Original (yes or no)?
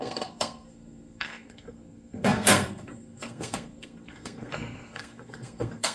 no